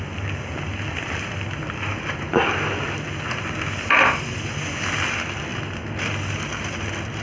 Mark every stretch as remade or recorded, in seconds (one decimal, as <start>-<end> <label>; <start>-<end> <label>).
0.0-7.2 recorded